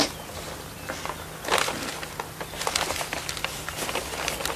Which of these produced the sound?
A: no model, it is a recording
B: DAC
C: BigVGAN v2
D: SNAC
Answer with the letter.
A